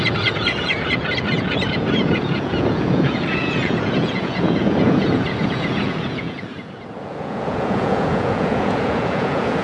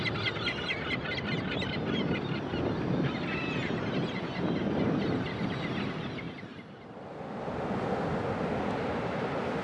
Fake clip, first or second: first